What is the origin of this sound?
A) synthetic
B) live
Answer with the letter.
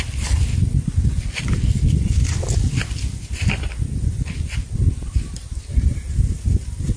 B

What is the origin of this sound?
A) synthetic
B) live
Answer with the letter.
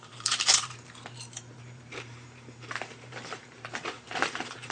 A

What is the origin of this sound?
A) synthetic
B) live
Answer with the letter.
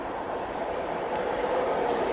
A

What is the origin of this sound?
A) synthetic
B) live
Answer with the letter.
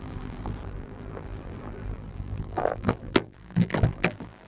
A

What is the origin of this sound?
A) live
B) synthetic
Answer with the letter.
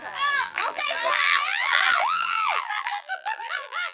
B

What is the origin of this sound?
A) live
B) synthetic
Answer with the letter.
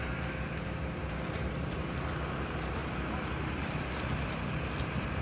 A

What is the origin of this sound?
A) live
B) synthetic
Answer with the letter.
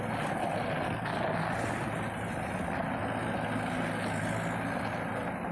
A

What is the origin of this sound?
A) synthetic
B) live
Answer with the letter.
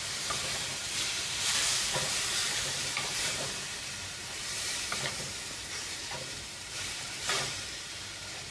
A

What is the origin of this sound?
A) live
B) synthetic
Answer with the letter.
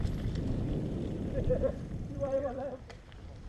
B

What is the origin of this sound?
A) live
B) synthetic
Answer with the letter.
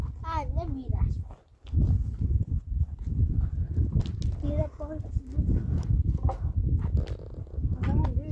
A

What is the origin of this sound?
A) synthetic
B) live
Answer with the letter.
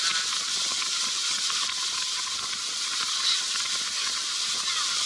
B